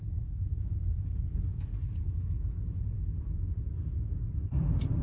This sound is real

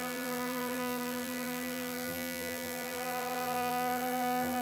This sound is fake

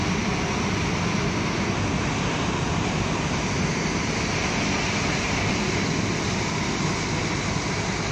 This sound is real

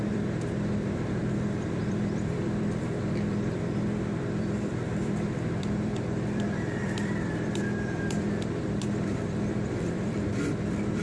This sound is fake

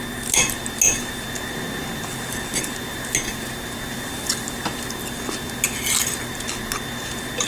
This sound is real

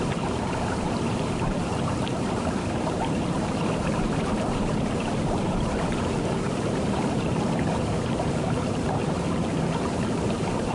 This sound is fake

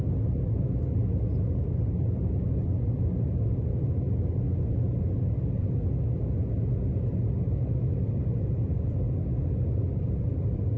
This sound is real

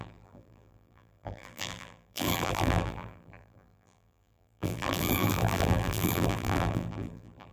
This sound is fake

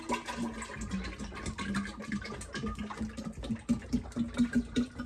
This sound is real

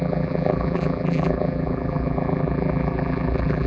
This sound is fake